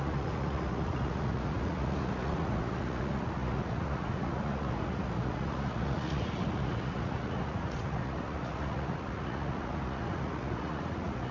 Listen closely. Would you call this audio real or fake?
fake